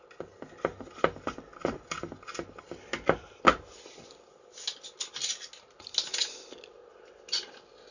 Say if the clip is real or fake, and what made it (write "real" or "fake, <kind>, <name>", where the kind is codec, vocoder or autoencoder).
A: real